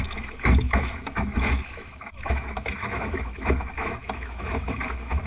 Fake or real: fake